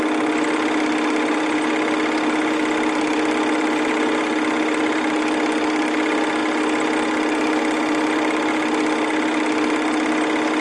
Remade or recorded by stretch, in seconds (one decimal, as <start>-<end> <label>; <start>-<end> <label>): 0.0-10.6 recorded